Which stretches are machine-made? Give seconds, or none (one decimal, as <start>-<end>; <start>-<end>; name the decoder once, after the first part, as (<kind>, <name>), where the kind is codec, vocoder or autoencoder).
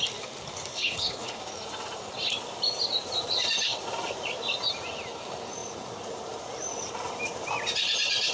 0.7-1.4 (codec, HILCodec)